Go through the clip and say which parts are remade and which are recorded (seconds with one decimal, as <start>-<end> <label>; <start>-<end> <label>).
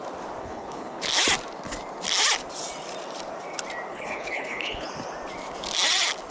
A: 0.0-0.4 recorded; 0.4-1.0 remade; 1.0-3.9 recorded; 3.9-4.9 remade; 4.9-6.3 recorded